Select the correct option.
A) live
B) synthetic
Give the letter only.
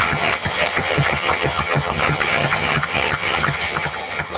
B